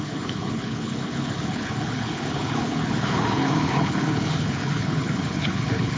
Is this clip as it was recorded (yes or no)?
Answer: no